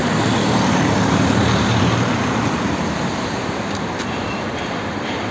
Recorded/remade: remade